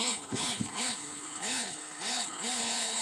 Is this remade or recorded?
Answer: remade